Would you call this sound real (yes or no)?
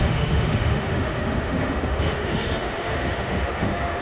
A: no